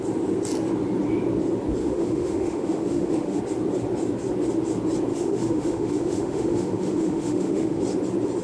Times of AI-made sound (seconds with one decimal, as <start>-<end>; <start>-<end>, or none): 1.8-3.4; 5.1-7.8